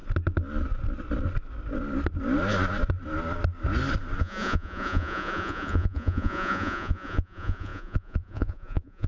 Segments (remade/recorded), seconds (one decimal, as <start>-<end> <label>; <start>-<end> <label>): 0.0-4.2 recorded; 4.2-9.1 remade